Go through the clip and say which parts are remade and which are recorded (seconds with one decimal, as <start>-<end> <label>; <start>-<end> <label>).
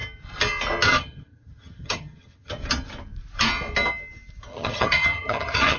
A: 0.0-0.9 recorded; 0.9-2.5 remade; 2.5-4.5 recorded; 4.5-5.8 remade